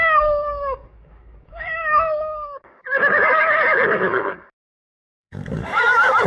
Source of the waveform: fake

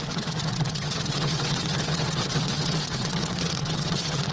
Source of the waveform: fake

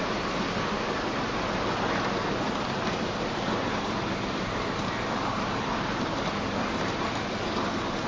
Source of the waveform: real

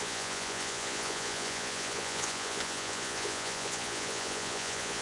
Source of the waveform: fake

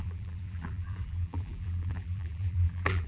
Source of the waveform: fake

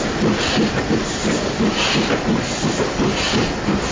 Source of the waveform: real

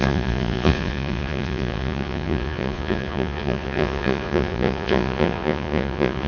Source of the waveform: fake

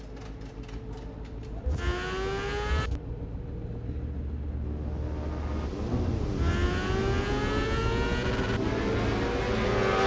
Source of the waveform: real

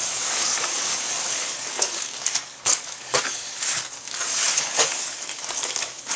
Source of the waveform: fake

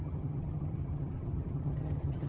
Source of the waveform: fake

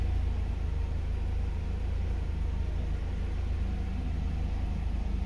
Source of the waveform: real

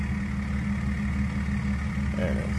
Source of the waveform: real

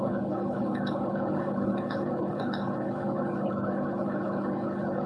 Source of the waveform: fake